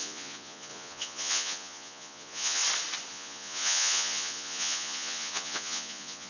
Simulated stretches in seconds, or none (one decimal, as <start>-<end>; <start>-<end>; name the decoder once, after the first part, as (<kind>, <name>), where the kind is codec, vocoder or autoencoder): 0.0-2.6 (vocoder, Vocos); 3.1-6.3